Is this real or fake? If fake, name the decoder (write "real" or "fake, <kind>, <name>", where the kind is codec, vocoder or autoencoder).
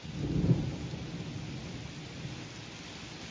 real